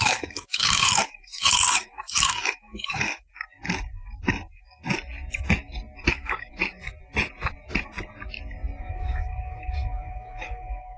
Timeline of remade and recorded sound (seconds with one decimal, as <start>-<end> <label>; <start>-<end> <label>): 0.0-3.3 remade; 3.3-6.1 recorded; 6.1-6.6 remade; 6.6-8.8 recorded; 8.8-11.0 remade